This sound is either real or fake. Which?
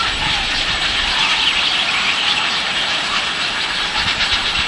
fake